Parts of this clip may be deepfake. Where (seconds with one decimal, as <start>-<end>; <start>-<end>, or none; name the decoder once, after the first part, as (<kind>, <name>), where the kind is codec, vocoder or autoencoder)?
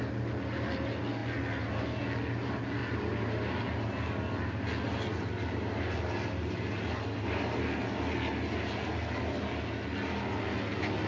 none